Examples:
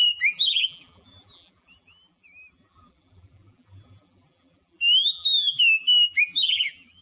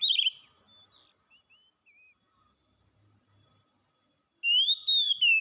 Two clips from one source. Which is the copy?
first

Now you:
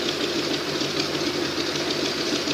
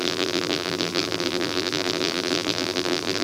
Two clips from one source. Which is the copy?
second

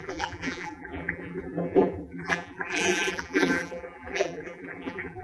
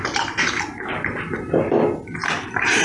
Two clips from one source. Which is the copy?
first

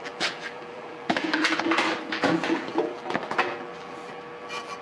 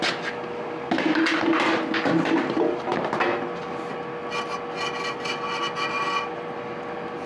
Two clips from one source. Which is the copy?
first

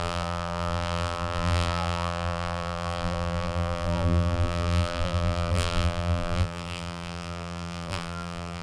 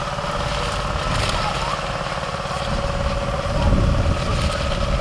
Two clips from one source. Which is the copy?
first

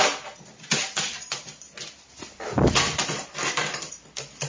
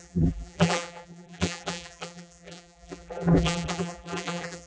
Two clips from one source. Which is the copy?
second